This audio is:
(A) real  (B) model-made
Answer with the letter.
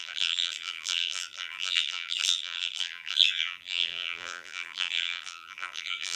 B